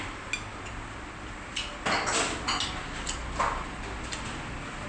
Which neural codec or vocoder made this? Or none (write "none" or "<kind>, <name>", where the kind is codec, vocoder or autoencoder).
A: none